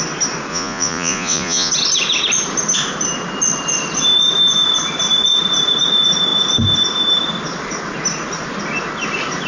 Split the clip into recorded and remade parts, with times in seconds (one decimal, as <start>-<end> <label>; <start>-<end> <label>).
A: 0.0-0.5 recorded; 0.5-1.7 remade; 1.7-9.5 recorded